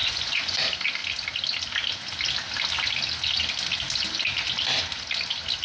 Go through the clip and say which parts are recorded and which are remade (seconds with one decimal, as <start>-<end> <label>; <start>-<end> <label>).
0.0-0.6 remade; 0.6-5.6 recorded